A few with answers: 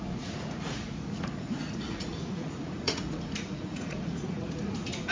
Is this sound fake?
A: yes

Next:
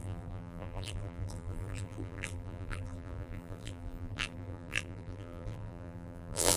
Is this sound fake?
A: yes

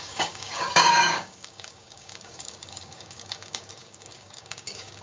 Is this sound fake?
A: yes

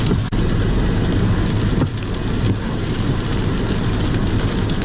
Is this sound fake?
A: no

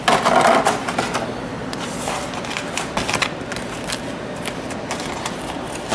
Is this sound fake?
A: no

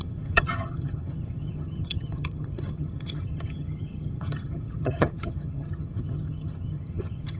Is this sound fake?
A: yes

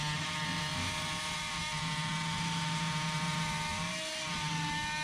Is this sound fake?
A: no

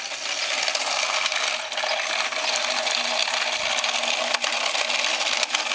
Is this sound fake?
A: no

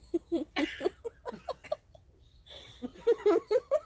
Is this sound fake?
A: yes